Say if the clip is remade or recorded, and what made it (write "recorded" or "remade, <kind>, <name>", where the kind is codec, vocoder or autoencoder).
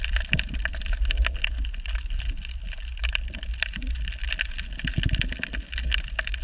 recorded